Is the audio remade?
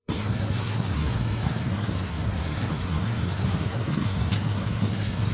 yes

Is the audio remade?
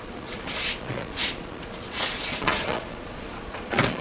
yes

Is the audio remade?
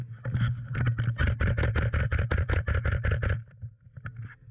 no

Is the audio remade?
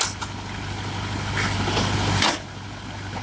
no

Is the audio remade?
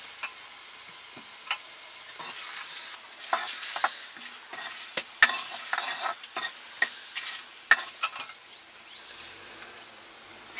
no